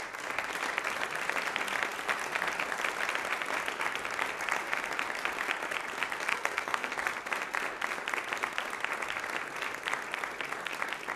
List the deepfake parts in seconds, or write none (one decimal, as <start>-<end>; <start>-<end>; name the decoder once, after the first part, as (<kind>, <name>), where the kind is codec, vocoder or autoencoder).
6.3-6.9 (codec, SNAC)